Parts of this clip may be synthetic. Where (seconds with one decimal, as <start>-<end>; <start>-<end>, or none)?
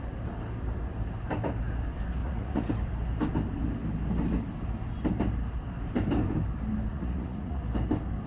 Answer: 2.2-2.7; 6.9-7.6